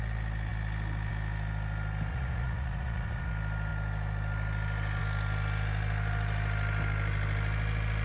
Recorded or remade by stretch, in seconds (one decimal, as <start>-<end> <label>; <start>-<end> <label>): 0.0-2.1 recorded; 2.1-3.3 remade; 3.3-8.0 recorded